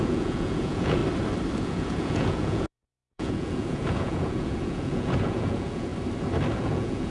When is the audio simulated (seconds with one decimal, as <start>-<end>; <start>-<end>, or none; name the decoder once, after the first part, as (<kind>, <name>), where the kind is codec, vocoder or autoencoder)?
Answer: 0.0-1.0 (vocoder, Vocos); 1.6-5.9; 6.5-7.1